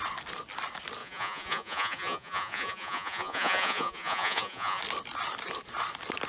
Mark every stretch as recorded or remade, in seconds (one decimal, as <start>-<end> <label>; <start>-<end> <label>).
0.0-1.0 recorded; 1.0-4.8 remade; 4.8-6.3 recorded